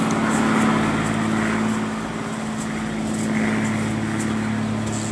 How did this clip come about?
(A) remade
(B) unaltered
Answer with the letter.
B